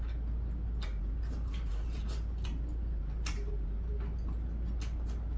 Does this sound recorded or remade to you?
recorded